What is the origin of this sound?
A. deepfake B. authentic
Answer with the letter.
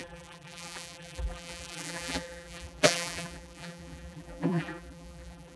A